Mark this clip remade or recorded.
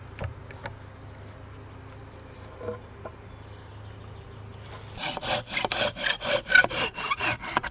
recorded